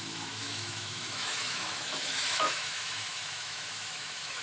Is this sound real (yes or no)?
no